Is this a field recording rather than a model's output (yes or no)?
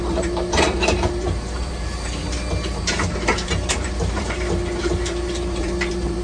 no